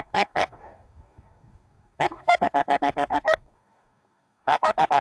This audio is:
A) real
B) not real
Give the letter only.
B